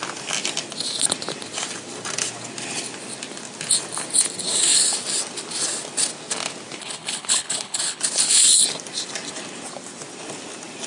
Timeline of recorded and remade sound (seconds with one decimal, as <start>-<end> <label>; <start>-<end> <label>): 0.0-6.8 recorded; 6.8-8.0 remade; 8.0-10.9 recorded